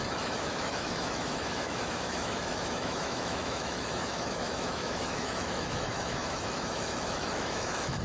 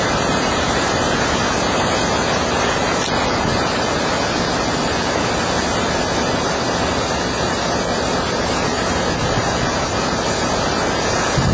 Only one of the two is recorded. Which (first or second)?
second